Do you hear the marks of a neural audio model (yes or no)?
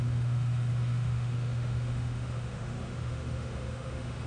yes